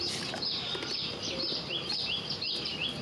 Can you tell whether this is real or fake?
real